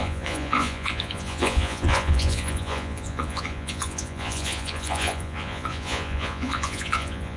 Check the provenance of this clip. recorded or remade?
remade